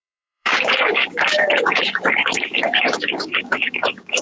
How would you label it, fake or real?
fake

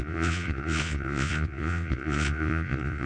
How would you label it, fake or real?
fake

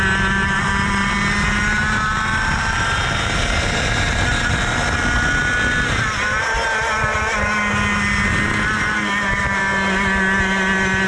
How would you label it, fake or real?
real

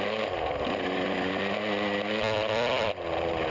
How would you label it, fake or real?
real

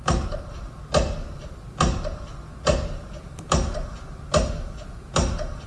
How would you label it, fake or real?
real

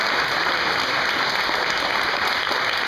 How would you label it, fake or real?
real